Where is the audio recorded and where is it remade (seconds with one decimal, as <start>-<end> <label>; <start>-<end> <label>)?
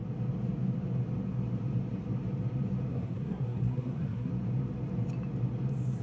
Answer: 0.0-2.9 recorded; 2.9-4.3 remade; 4.3-6.0 recorded